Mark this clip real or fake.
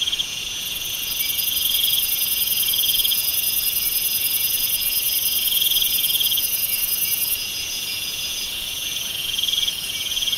fake